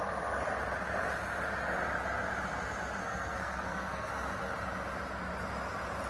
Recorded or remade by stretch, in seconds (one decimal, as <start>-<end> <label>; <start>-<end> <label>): 0.0-3.0 recorded; 3.0-4.1 remade; 4.1-6.1 recorded